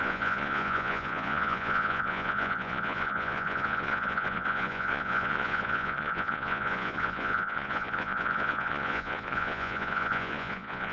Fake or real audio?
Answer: fake